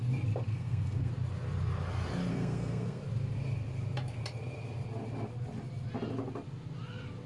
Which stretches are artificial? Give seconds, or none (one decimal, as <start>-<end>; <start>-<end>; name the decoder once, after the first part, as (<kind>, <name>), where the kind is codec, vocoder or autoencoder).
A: 0.5-1.1 (codec, SNAC); 2.3-3.0